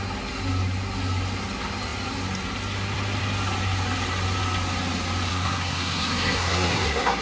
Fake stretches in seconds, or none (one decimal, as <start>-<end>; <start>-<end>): 5.3-7.2